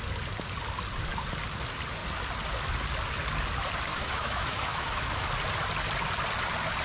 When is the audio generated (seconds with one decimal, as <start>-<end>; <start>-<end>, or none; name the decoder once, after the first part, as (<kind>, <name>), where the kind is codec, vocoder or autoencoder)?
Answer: 3.9-5.3 (autoencoder, DAC-VAE)